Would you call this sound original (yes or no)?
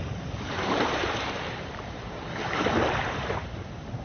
no